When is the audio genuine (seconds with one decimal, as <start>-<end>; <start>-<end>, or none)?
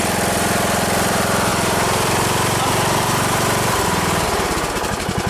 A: none